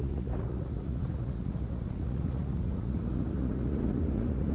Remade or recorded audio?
remade